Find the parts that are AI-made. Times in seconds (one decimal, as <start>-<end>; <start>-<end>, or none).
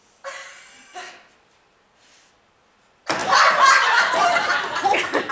none